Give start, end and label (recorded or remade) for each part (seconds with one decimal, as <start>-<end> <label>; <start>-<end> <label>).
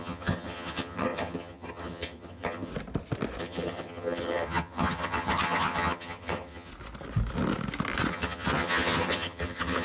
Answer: 0.0-2.7 remade; 2.7-3.4 recorded; 3.4-6.7 remade; 6.7-8.1 recorded; 8.1-9.8 remade